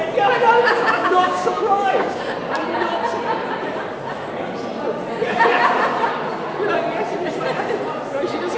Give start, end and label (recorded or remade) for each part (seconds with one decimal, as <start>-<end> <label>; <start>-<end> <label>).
0.0-0.7 recorded; 0.7-2.2 remade; 2.2-8.6 recorded

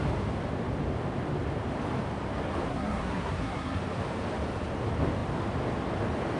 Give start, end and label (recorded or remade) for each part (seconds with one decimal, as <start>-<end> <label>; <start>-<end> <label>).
0.0-2.7 recorded; 2.7-3.8 remade; 3.8-6.4 recorded

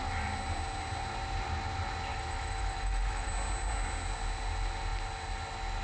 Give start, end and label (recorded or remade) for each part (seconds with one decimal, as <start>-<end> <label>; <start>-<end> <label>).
0.0-2.1 recorded; 2.1-3.3 remade; 3.3-5.8 recorded